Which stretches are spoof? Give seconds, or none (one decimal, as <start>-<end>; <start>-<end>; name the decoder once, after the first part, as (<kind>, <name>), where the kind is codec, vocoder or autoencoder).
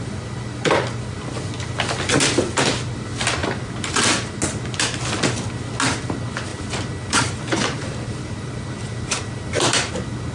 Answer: 6.5-9.9 (vocoder, BigVGAN v2)